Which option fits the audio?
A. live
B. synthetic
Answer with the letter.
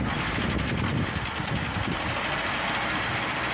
A